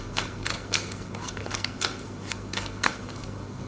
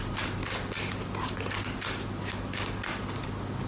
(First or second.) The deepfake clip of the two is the first